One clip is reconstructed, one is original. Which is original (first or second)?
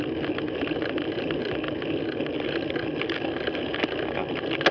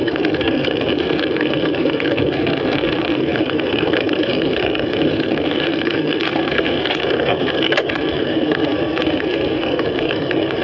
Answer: first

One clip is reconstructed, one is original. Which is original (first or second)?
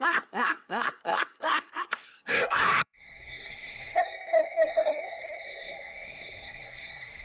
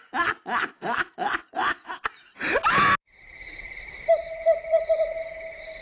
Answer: second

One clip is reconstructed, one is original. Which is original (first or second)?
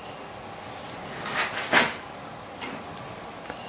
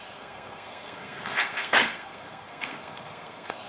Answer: first